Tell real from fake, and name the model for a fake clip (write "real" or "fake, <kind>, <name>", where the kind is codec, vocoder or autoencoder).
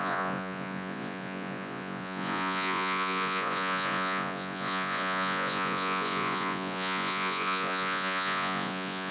fake, vocoder, Vocos